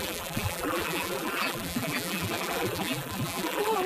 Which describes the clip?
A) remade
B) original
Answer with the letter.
A